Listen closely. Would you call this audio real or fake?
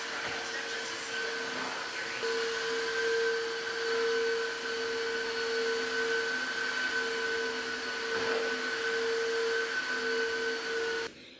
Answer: real